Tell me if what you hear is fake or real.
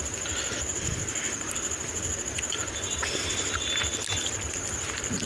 real